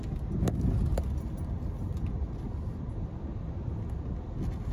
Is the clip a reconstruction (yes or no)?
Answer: no